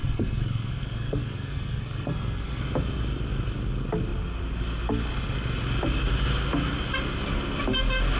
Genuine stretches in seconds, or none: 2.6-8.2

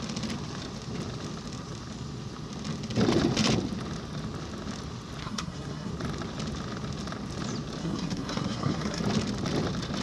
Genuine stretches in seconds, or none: 0.0-5.2; 5.9-7.8; 9.0-10.0

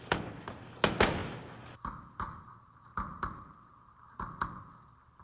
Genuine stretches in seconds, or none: 0.0-5.2

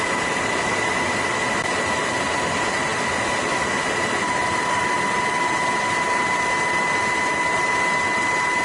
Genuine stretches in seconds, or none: 0.0-8.6

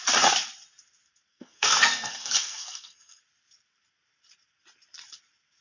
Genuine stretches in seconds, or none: 0.0-1.3; 3.2-5.6

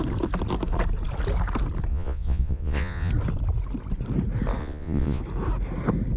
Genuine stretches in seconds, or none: 0.0-1.9; 3.1-4.6; 5.2-6.2